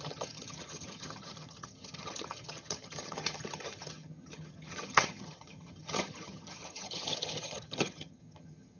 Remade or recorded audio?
remade